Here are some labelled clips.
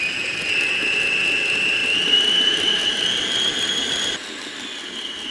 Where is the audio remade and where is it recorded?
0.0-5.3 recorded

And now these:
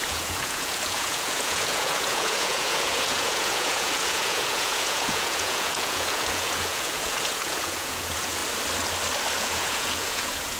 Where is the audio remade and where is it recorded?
0.0-8.4 remade; 8.4-9.4 recorded; 9.4-10.6 remade

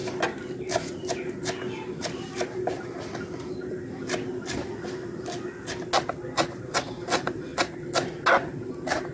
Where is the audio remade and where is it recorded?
0.0-9.1 recorded